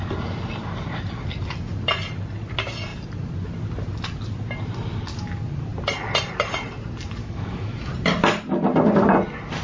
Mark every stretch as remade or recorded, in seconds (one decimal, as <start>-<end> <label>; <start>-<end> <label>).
0.0-7.2 recorded; 7.2-7.9 remade; 7.9-9.6 recorded